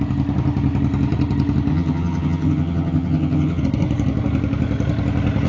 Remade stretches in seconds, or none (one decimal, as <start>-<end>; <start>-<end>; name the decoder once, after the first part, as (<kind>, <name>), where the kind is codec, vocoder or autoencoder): 1.7-3.6 (vocoder, HiFi-GAN)